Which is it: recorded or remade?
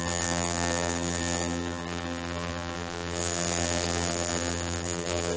remade